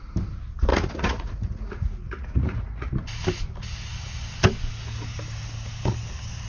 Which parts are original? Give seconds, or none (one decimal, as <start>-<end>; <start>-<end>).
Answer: 0.0-0.7; 2.9-6.5